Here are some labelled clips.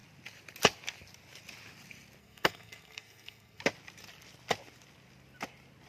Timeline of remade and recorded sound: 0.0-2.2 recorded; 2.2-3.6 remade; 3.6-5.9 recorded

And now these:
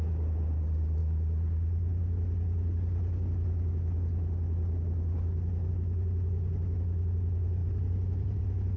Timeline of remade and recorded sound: 0.0-7.6 recorded; 7.6-8.4 remade; 8.4-8.8 recorded

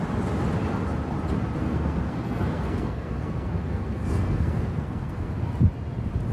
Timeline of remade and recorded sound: 0.0-1.6 recorded; 1.6-5.4 remade; 5.4-6.3 recorded

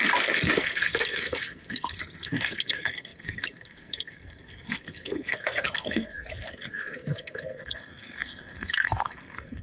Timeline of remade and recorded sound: 0.0-9.6 remade

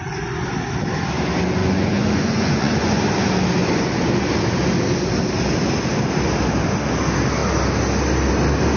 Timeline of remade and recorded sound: 0.0-1.6 recorded; 1.6-3.0 remade; 3.0-3.6 recorded; 3.6-4.3 remade; 4.3-8.8 recorded

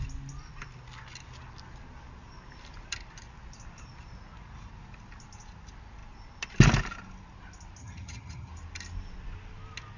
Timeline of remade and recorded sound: 0.0-7.8 recorded; 7.8-8.5 remade; 8.5-10.0 recorded

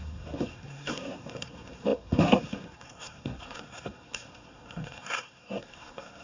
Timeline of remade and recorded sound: 0.0-6.2 remade